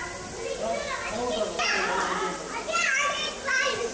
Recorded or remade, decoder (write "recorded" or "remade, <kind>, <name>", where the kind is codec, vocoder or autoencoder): recorded